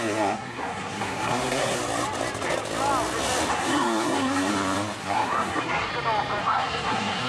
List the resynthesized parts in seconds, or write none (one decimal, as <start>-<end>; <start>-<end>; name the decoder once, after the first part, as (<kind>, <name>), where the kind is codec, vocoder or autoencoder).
0.0-1.8 (codec, SNAC); 3.5-4.5; 5.0-5.9; 6.4-7.3